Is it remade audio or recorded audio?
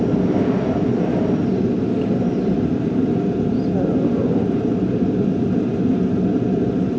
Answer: recorded